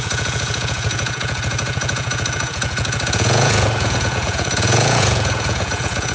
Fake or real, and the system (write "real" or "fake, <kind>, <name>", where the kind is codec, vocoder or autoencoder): fake, vocoder, Vocos